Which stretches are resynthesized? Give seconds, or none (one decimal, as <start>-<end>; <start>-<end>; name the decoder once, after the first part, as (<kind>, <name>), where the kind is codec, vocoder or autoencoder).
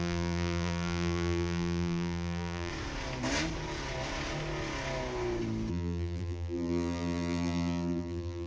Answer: 0.0-2.7 (vocoder, BigVGAN v2); 5.7-8.5